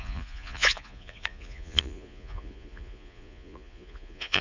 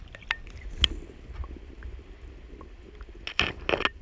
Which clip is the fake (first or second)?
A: first